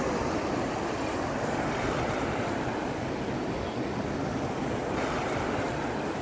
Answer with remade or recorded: recorded